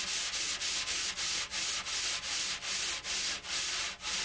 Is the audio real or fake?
real